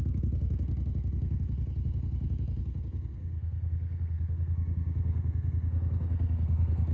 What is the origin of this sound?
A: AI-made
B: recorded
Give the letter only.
A